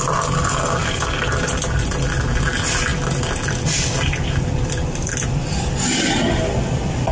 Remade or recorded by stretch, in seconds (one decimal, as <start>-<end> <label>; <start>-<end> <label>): 0.0-7.1 recorded